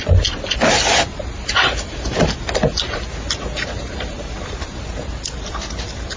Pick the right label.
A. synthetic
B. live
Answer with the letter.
B